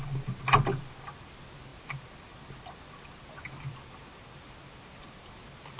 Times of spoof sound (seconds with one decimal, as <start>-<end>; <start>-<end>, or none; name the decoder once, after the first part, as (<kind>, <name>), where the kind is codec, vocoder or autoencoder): none